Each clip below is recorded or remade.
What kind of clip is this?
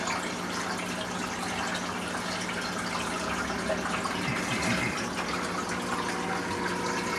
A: recorded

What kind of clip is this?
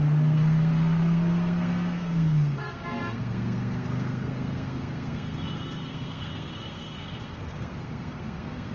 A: remade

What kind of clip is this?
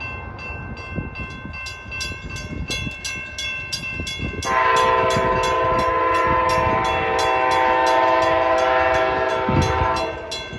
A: recorded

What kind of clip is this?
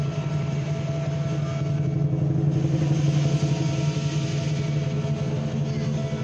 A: recorded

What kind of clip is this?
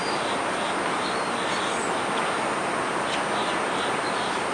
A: recorded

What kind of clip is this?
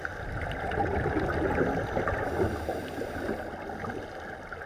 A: recorded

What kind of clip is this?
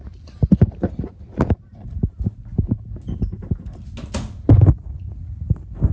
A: recorded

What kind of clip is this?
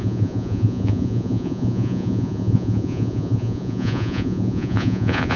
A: remade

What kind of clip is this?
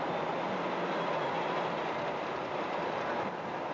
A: recorded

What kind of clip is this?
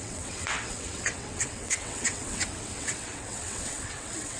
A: remade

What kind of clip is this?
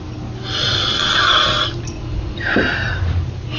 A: recorded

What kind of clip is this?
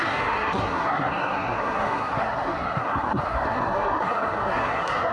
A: remade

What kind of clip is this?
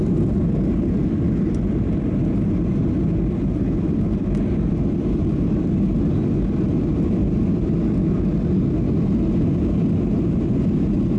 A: recorded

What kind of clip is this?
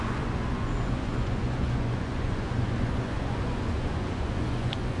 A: remade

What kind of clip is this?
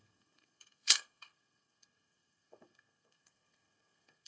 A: remade